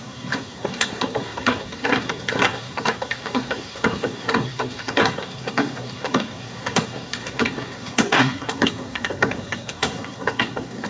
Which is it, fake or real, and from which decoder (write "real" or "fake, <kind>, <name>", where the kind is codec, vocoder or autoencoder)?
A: fake, codec, SNAC